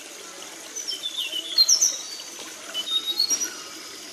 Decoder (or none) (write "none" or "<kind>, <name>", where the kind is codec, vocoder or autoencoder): none